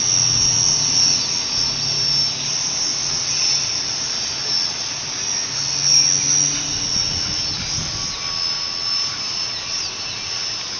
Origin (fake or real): real